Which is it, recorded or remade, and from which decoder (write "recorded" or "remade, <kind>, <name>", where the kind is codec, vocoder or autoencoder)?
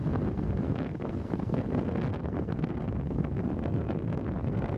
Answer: remade, codec, SNAC